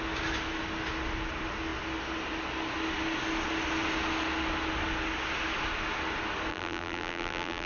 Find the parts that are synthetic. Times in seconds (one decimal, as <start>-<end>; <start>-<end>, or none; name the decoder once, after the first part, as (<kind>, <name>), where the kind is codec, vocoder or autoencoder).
6.5-7.7 (vocoder, BigVGAN v2)